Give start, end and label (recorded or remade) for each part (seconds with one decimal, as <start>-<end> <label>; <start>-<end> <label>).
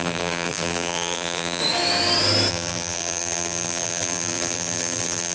0.0-1.6 remade; 1.6-2.5 recorded; 2.5-5.3 remade